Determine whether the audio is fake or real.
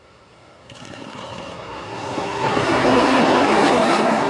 fake